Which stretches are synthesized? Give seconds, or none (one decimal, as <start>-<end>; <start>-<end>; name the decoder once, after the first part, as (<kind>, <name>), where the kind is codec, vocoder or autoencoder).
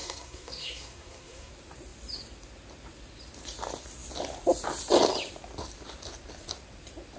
0.0-1.5 (codec, SNAC)